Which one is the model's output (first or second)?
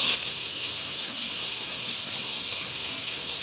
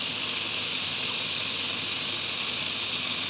first